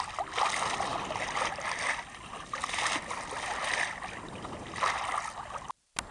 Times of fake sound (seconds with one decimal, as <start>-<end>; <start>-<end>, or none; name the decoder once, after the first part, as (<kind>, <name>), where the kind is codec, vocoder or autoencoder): none